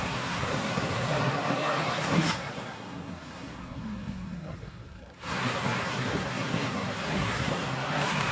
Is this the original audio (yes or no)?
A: no